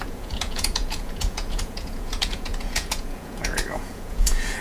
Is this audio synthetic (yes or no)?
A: yes